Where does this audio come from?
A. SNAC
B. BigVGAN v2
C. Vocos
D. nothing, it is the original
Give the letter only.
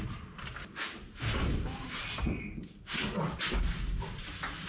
D